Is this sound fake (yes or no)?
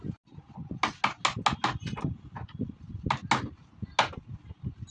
no